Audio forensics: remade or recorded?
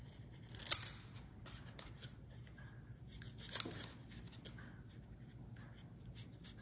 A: recorded